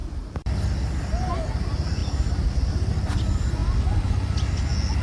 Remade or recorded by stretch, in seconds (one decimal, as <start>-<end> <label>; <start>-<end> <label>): 0.0-2.0 recorded; 2.0-2.9 remade; 2.9-5.0 recorded